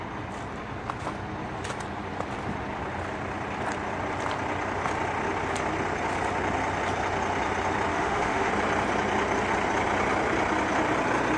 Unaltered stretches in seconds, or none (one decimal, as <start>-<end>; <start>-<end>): 0.0-7.9; 8.5-11.4